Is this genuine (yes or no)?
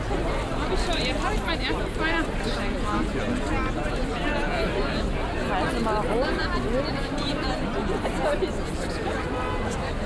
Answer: yes